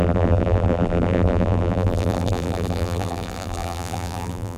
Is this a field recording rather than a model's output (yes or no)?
no